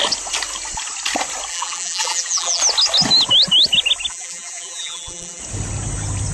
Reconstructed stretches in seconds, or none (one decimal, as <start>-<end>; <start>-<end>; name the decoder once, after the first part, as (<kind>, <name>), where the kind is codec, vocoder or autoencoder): 1.5-2.6 (vocoder, BigVGAN v2); 4.1-5.4